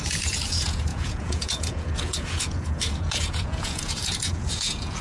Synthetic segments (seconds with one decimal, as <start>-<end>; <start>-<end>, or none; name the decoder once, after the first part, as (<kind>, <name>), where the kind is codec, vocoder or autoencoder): 0.0-5.0 (vocoder, Vocos)